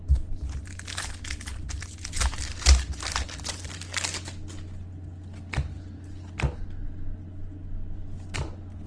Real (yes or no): yes